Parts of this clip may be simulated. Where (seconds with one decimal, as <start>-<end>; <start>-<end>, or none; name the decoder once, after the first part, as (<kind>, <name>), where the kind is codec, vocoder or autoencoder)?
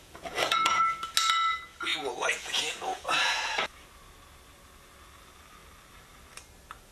0.0-0.8 (vocoder, Vocos); 1.9-3.4